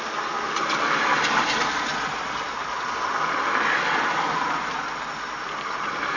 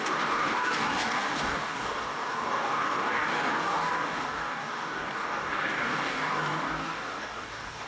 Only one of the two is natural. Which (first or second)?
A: first